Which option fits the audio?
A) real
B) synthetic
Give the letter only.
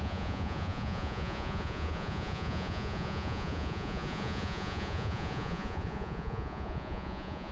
B